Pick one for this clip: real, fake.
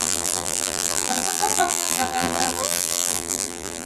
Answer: fake